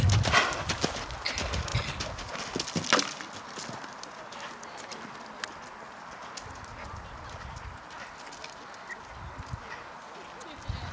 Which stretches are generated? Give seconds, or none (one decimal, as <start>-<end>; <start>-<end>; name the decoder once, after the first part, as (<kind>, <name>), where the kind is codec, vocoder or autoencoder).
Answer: none